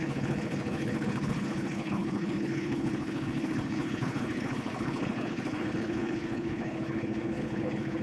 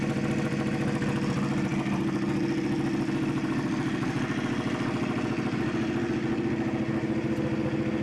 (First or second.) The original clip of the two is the second